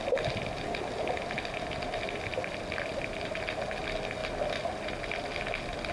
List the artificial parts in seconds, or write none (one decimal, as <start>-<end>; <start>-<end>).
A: none